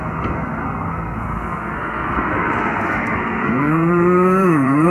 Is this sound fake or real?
fake